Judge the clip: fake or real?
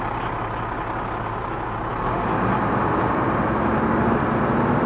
real